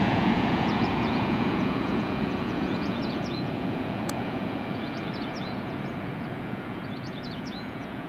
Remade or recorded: remade